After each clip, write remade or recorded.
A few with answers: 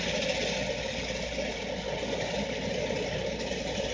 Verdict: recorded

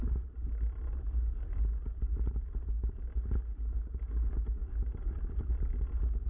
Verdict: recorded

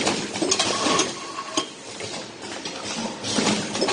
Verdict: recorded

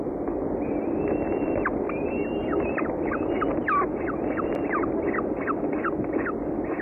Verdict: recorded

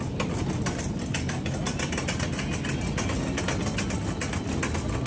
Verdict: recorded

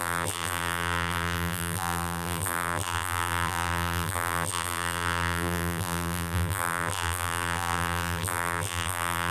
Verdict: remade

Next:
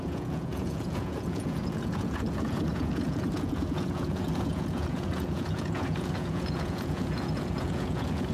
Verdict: remade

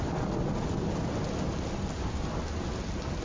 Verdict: recorded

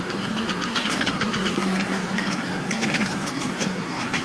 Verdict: remade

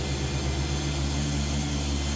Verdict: recorded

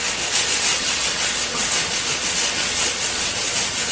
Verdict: remade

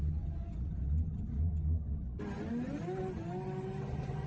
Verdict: recorded